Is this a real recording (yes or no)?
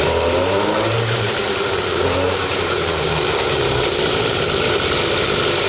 no